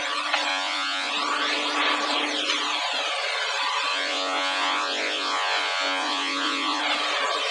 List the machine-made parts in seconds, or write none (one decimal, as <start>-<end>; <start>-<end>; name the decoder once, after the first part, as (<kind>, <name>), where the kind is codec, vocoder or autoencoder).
0.5-1.1 (vocoder, Vocos); 3.9-6.8